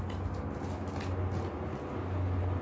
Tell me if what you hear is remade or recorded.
recorded